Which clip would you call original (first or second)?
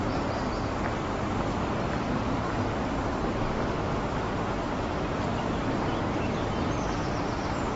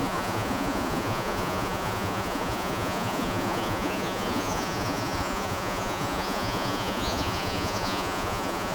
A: first